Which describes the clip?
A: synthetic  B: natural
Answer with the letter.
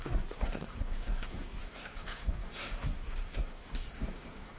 A